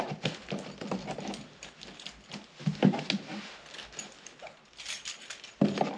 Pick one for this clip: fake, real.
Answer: real